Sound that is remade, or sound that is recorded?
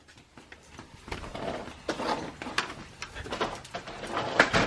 recorded